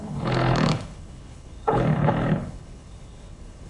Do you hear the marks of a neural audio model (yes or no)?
yes